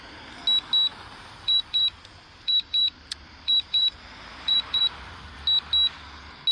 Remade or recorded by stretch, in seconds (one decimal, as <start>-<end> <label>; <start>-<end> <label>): 0.0-0.9 recorded; 0.9-4.8 remade; 4.8-6.5 recorded